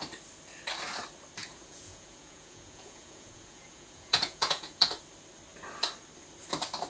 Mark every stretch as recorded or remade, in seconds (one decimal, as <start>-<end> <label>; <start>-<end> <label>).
0.0-1.4 recorded; 1.4-4.9 remade; 4.9-6.9 recorded